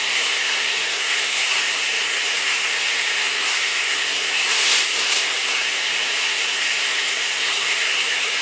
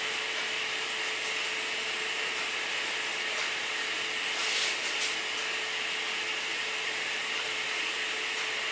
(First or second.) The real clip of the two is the second